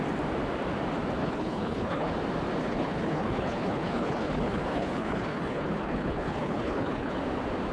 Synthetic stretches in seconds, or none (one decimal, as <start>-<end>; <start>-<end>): 1.2-2.1; 2.6-7.2